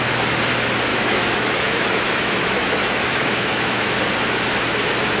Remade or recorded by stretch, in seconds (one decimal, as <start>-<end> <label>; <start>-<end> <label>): 0.0-0.9 recorded; 0.9-4.0 remade; 4.0-5.2 recorded